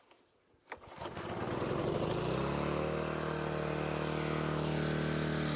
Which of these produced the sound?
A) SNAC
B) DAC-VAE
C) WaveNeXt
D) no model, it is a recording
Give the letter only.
D